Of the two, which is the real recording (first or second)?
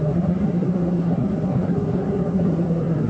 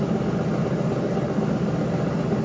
second